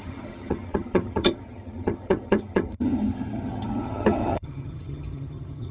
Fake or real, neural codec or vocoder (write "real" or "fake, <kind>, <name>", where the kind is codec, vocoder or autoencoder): fake, vocoder, HiFi-GAN